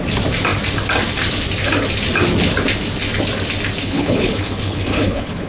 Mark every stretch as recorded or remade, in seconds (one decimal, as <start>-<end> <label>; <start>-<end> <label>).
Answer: 0.0-3.8 recorded; 3.8-5.5 remade